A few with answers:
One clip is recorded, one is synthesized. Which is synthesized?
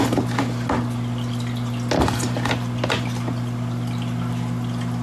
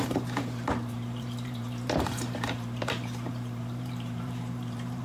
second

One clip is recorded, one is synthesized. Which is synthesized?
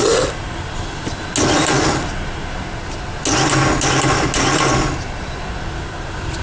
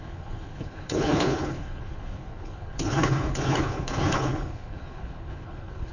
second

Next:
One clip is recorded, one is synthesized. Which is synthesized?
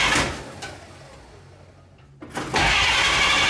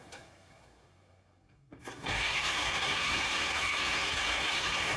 second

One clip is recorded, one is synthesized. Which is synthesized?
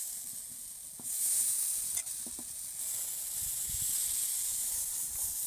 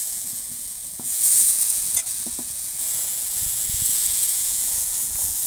second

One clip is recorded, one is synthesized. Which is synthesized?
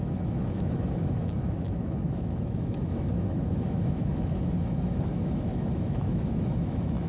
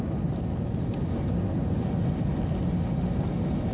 first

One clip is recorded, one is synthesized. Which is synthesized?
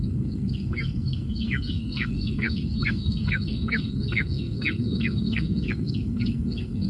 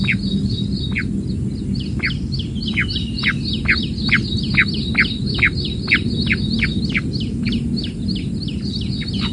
first